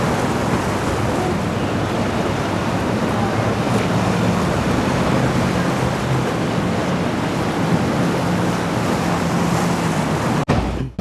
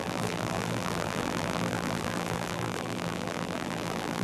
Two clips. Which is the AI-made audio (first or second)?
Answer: second